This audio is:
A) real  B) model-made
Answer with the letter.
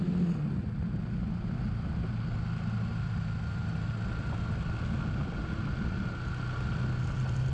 A